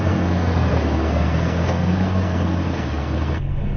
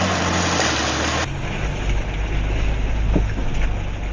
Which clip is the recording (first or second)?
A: second